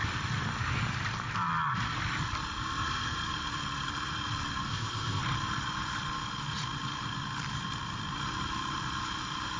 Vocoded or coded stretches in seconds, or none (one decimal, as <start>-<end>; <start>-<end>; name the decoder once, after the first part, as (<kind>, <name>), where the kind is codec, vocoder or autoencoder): 4.7-5.2 (codec, ZipCodec)